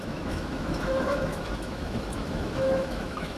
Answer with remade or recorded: remade